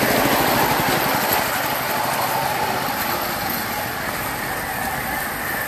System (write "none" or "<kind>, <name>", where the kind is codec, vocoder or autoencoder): none